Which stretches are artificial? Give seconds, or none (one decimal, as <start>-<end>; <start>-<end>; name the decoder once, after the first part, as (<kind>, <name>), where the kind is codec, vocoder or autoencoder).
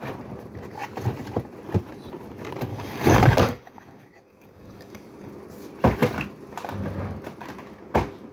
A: 2.7-5.3 (codec, DAC)